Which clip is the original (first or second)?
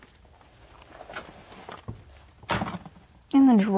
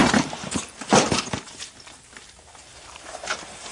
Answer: first